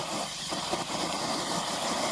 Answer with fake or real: real